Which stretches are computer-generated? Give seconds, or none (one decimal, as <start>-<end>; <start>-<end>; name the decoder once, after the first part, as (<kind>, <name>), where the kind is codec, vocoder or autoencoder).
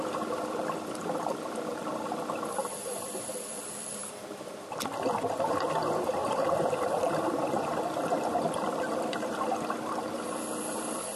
0.0-11.2 (vocoder, BigVGAN v2)